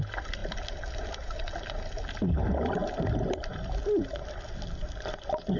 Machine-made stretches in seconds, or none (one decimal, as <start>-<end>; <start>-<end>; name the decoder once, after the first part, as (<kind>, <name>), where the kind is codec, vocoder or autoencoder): none